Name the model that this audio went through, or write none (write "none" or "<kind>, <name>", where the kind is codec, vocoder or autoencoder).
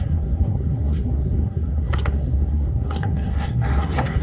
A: codec, SNAC